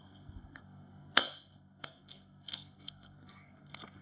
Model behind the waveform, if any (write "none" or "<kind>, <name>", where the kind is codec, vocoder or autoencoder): codec, SNAC